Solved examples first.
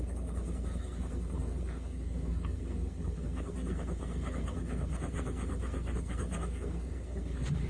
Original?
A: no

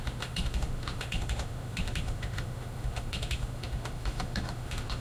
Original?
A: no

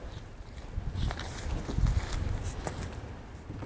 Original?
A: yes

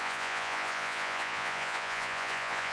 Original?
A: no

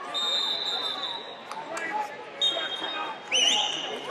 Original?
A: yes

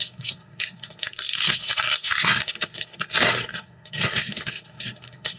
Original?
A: no